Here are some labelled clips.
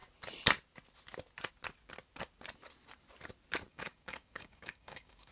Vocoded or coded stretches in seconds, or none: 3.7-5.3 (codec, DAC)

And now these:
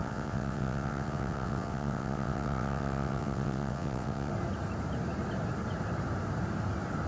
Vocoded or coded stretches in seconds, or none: 0.0-4.3 (vocoder, WaveNeXt)

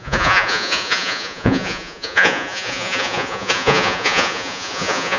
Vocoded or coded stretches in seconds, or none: 0.0-5.2 (vocoder, Vocos)

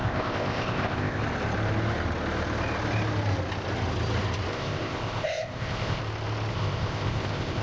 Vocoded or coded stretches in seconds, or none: 0.0-1.2 (codec, ZipCodec); 4.5-6.0; 6.5-7.6